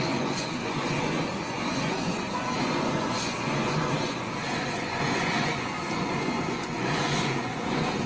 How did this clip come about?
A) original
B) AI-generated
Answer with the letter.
B